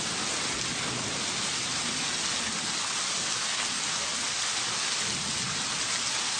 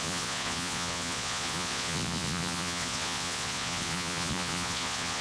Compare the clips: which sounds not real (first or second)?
second